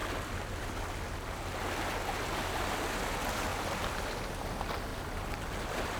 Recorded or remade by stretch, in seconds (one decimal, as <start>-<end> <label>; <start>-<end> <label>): 0.0-0.7 remade; 0.7-4.9 recorded; 4.9-6.0 remade